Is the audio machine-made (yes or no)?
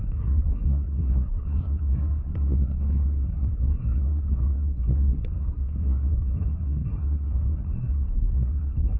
yes